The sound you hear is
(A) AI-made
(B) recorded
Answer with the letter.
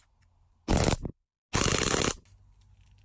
B